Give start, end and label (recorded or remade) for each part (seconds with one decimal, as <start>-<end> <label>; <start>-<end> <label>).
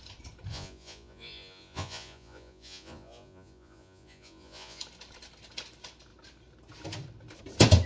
0.0-0.5 recorded; 0.5-4.8 remade; 4.8-7.9 recorded